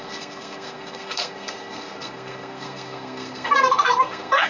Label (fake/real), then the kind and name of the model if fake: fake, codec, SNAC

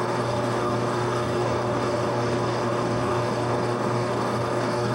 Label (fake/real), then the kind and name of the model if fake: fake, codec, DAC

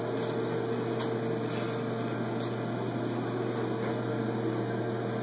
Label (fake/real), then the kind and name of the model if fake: real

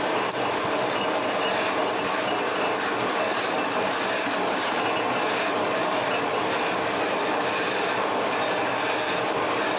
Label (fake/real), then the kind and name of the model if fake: real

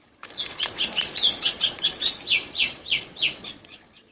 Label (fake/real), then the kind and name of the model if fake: fake, vocoder, Vocos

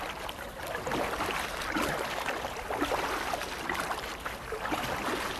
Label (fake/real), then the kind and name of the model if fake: real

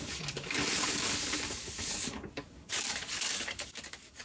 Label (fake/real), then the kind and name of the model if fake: fake, codec, DAC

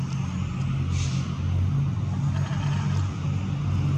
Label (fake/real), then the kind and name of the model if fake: real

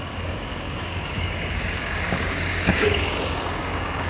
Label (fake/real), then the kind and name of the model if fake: fake, codec, DAC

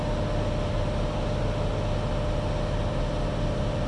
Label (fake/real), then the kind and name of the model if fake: real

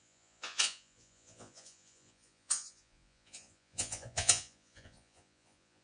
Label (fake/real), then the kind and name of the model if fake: fake, vocoder, Vocos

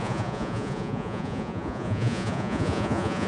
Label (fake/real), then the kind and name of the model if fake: fake, vocoder, Vocos